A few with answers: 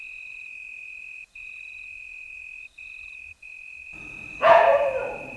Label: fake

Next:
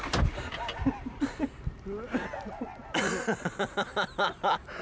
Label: real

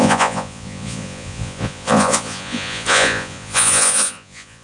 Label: fake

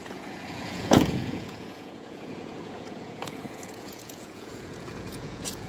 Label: fake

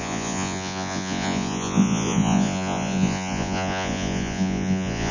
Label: fake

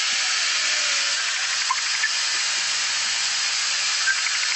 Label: fake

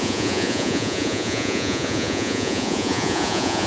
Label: fake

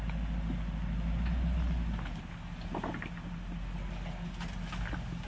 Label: real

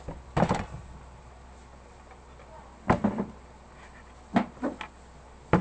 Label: real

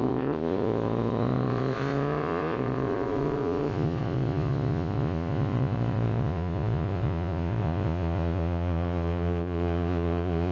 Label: fake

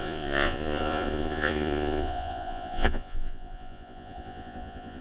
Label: fake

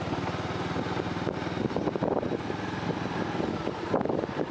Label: real